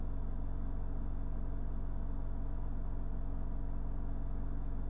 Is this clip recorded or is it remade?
recorded